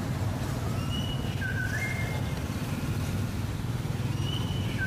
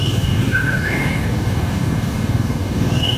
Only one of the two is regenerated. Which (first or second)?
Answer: second